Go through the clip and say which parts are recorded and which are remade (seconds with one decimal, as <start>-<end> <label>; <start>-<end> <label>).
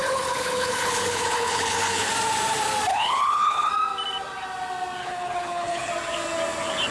0.0-2.1 remade; 2.1-2.9 recorded; 2.9-3.7 remade; 3.7-5.0 recorded; 5.0-5.9 remade; 5.9-6.9 recorded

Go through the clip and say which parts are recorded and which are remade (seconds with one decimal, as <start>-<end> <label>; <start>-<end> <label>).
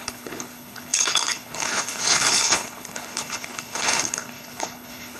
0.0-5.2 remade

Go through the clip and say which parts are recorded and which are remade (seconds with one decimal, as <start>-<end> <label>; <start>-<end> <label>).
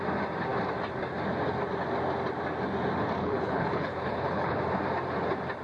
0.0-3.2 recorded; 3.2-4.6 remade; 4.6-5.6 recorded